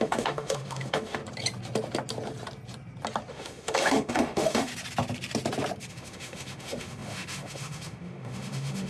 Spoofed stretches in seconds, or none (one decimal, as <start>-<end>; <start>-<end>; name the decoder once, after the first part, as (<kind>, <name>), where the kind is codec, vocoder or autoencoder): 0.0-1.2 (autoencoder, DAC-VAE); 3.3-4.7; 5.9-8.9